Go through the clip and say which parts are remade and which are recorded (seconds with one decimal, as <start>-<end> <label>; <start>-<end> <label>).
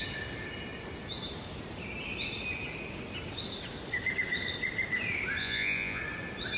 0.0-5.4 recorded; 5.4-6.0 remade; 6.0-6.6 recorded